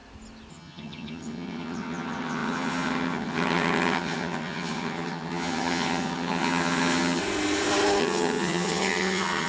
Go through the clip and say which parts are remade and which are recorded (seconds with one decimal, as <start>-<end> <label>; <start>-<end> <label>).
0.0-0.5 recorded; 0.5-7.2 remade; 7.2-8.0 recorded; 8.0-9.5 remade